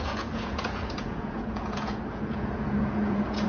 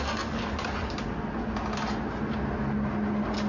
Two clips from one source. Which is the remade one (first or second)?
first